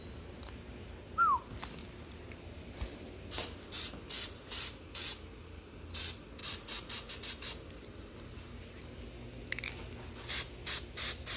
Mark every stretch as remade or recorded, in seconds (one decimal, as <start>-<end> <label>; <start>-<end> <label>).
0.0-6.4 recorded; 6.4-7.1 remade; 7.1-11.4 recorded